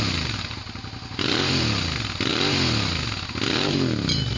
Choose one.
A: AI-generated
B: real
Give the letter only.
B